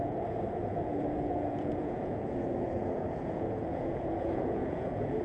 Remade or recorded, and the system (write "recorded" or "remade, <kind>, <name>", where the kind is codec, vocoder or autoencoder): remade, vocoder, Vocos